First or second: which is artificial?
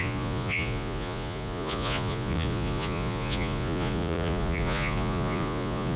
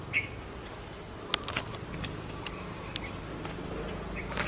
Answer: first